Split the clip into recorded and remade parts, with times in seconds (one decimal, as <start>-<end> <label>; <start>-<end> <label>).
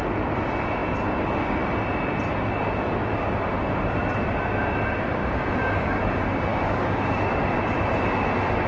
0.0-5.2 recorded; 5.2-6.0 remade; 6.0-6.5 recorded; 6.5-7.2 remade; 7.2-8.7 recorded